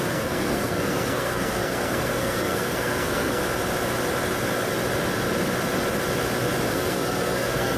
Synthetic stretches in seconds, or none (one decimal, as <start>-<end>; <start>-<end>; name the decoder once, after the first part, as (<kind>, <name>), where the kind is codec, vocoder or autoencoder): 0.0-3.4 (codec, SNAC); 6.7-7.8

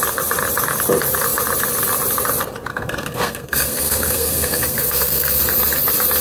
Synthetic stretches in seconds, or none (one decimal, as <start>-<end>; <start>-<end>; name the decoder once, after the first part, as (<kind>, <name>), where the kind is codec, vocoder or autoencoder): 2.7-5.4 (codec, SNAC)

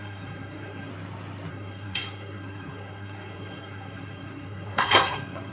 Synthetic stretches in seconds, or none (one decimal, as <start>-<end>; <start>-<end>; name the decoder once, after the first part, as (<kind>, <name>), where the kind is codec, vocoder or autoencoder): 0.0-0.9 (codec, SNAC); 1.5-5.5